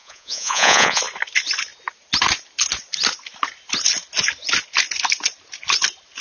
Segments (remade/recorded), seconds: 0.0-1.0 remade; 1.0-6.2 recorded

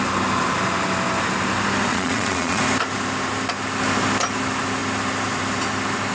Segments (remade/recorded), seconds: 0.0-1.9 recorded; 1.9-2.6 remade; 2.6-6.1 recorded

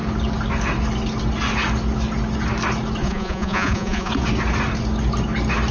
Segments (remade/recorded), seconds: 0.0-3.0 recorded; 3.0-4.1 remade; 4.1-5.7 recorded

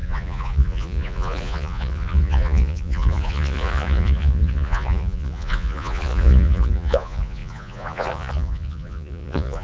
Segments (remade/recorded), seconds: 0.0-9.6 remade

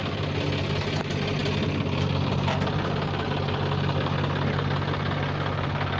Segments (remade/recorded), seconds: 0.0-6.0 recorded